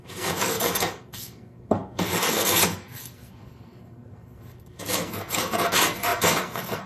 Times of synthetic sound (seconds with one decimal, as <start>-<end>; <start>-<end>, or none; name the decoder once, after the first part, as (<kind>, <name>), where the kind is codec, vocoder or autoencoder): 0.0-6.9 (codec, SNAC)